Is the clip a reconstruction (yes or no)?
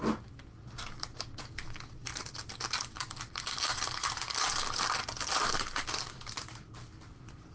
no